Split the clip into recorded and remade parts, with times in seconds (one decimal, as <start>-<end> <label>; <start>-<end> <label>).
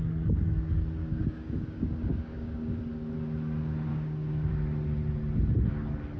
0.0-1.0 recorded; 1.0-2.8 remade; 2.8-3.9 recorded; 3.9-4.5 remade; 4.5-6.2 recorded